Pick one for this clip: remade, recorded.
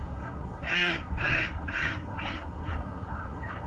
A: remade